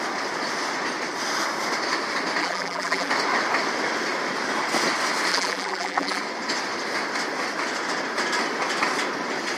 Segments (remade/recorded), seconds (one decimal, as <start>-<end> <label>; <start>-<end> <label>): 0.0-2.4 recorded; 2.4-3.1 remade; 3.1-5.3 recorded; 5.3-6.2 remade; 6.2-9.6 recorded